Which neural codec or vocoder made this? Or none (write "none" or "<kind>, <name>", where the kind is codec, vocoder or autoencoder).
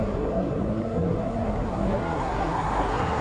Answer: codec, SNAC